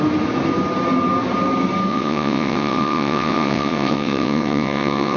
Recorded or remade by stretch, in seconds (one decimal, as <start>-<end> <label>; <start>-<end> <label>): 0.0-1.9 recorded; 1.9-5.2 remade